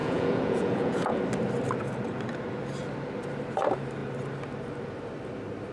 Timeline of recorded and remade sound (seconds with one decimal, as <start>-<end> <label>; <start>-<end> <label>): 0.0-1.2 remade; 1.2-5.7 recorded